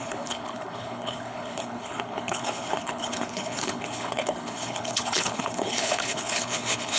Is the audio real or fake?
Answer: fake